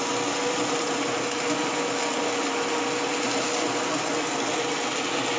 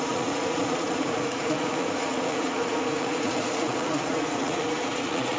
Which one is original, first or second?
first